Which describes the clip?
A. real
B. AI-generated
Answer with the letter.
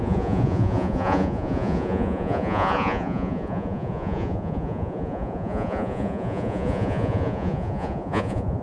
B